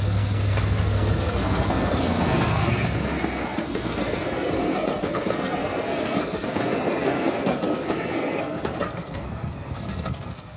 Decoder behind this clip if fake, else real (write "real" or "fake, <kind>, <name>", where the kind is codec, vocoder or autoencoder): fake, codec, SNAC